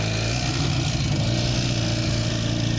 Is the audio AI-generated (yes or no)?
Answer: no